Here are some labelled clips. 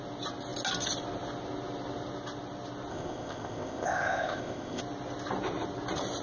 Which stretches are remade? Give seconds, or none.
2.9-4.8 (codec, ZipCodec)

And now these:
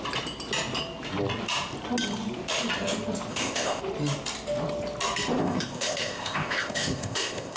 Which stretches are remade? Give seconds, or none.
3.3-3.8 (codec, ZipCodec); 5.4-7.6

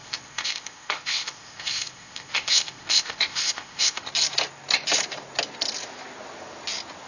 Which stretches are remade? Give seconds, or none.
0.0-4.1 (codec, ZipCodec)

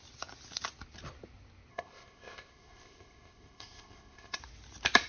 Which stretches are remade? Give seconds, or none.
1.7-4.4 (codec, ZipCodec)

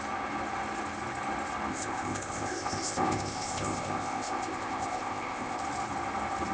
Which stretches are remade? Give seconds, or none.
1.7-5.6 (codec, ZipCodec)

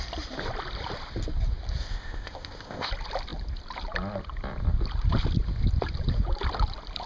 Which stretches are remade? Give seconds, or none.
1.8-2.9 (codec, ZipCodec)

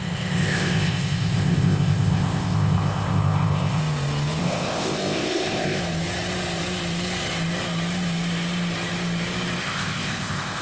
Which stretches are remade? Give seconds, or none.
0.0-3.8 (codec, ZipCodec); 4.4-5.8; 9.6-10.6

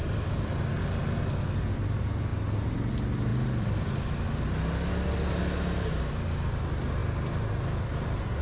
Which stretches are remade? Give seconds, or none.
none